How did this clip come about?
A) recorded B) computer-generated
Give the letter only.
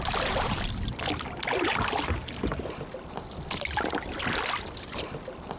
A